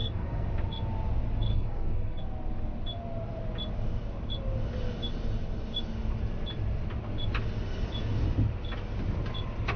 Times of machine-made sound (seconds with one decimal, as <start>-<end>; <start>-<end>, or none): 0.0-0.5; 1.5-2.2